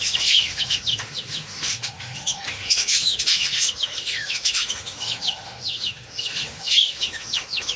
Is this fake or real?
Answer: fake